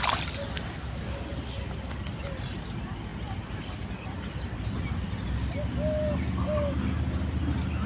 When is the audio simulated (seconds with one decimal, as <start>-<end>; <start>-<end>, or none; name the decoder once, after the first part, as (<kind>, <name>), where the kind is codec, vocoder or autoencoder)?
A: none